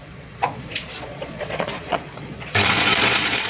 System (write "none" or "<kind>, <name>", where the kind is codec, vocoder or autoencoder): vocoder, Vocos